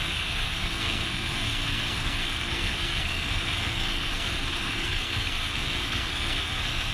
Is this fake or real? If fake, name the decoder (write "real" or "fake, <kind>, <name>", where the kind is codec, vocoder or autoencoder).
fake, codec, SNAC